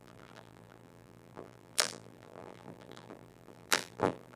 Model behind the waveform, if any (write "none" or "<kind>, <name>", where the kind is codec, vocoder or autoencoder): vocoder, BigVGAN v2